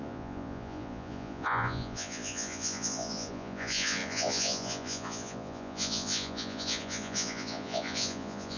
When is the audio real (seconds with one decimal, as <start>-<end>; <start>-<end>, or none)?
none

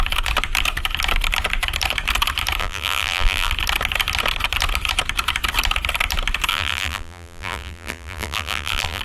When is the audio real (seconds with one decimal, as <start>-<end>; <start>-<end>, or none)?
0.0-2.6; 3.5-6.5

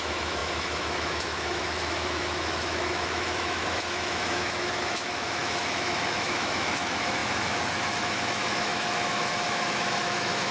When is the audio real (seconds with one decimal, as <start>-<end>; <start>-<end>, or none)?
none